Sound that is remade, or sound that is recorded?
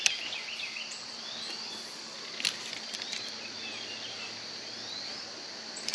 recorded